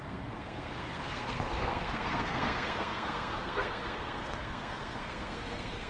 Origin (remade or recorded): remade